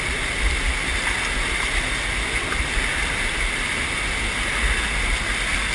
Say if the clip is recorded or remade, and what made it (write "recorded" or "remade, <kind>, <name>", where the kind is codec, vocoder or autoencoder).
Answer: recorded